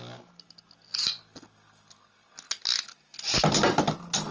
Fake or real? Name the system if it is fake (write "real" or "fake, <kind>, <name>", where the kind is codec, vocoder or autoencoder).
real